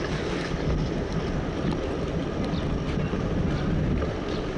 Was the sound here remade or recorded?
recorded